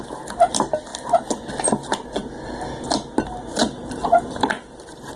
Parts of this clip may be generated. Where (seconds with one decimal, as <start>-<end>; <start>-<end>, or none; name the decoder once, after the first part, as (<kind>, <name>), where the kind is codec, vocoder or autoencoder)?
3.6-4.6 (vocoder, BigVGAN v2)